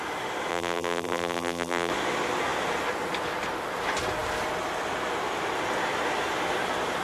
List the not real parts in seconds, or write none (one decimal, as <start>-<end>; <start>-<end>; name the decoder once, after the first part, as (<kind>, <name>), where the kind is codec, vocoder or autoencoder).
0.5-1.9 (vocoder, BigVGAN v2)